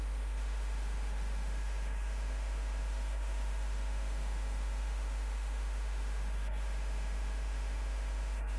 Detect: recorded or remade remade